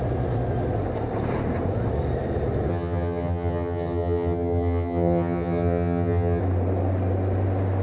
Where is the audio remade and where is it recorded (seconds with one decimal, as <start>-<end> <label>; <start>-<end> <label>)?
0.0-2.7 recorded; 2.7-6.4 remade; 6.4-7.8 recorded